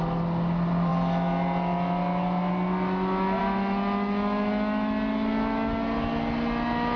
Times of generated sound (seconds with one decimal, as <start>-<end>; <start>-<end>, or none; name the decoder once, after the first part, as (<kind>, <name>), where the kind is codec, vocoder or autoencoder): none